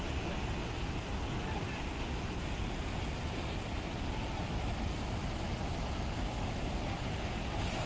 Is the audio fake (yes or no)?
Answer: no